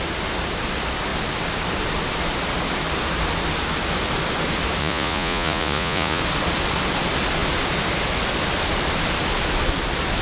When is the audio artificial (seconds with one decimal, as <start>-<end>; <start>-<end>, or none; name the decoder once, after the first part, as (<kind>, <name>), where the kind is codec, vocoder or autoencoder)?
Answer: 4.8-6.2 (vocoder, Vocos)